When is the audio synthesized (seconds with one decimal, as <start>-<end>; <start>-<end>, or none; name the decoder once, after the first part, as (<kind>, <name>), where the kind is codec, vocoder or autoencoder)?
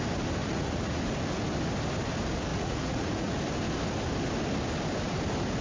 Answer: 0.4-1.0 (vocoder, Vocos); 2.5-3.4